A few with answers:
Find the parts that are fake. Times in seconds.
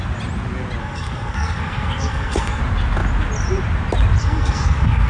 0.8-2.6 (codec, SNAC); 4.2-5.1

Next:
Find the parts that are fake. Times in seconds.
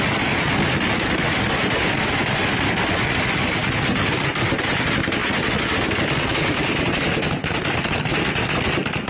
none